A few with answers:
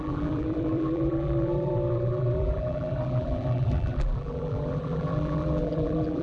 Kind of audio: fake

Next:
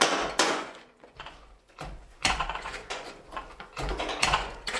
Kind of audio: fake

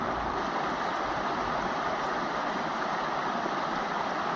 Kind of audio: real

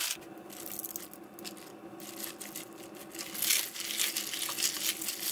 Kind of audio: real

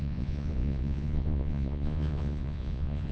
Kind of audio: fake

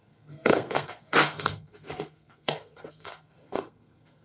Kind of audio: fake